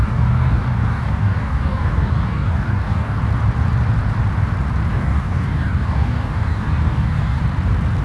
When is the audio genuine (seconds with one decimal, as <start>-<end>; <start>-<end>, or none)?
3.2-4.9; 7.4-8.0